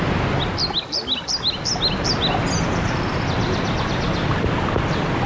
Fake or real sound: real